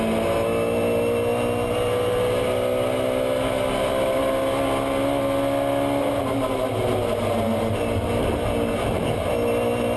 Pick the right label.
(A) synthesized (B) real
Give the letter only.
B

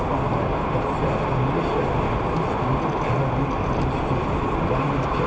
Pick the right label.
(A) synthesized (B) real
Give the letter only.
B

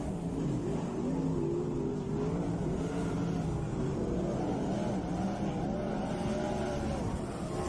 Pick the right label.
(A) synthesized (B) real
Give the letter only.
B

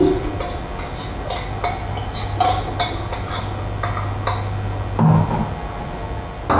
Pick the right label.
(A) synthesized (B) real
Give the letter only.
B